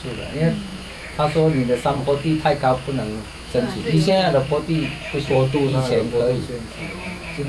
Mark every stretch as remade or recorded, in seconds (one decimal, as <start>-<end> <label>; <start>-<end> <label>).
0.0-7.5 remade